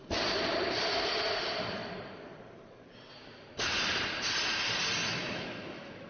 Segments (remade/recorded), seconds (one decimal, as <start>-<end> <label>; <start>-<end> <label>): 0.0-5.1 recorded; 5.1-6.1 remade